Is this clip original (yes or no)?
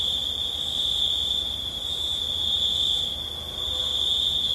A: no